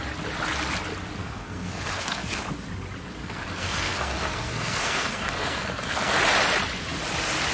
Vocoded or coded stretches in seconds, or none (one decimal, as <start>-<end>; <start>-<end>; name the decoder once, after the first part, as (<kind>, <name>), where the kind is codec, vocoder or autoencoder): 1.2-2.4 (codec, SNAC); 3.2-6.2